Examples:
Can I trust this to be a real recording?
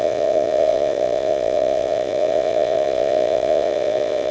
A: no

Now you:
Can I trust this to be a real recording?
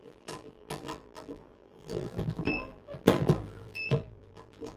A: no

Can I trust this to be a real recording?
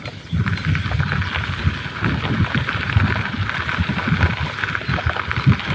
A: yes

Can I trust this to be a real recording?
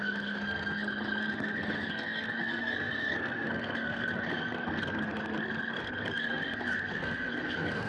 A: no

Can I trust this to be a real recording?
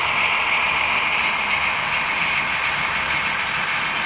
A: yes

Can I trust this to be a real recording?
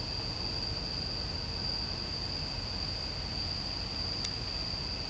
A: yes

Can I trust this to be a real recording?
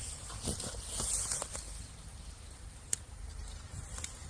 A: yes